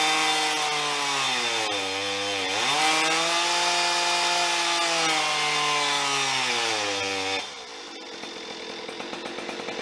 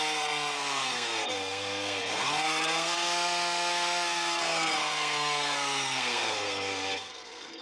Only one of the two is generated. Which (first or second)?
second